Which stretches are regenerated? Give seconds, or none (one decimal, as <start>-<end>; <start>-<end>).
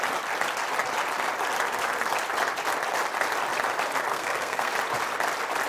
4.1-4.7